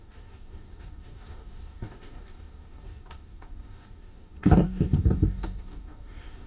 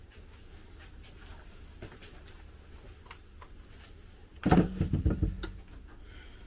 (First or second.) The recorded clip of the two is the second